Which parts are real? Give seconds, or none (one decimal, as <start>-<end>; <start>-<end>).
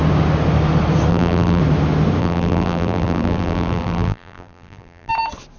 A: 0.0-1.1; 1.6-2.2; 5.1-5.6